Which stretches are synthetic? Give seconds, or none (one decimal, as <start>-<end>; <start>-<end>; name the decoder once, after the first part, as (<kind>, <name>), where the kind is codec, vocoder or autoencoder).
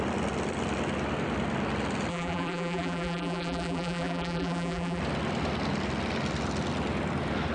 2.1-5.0 (vocoder, BigVGAN v2)